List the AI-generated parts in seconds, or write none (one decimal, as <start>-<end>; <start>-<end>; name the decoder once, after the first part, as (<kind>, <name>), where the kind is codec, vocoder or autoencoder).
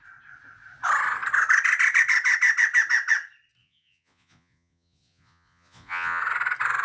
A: 3.6-6.2 (vocoder, Vocos)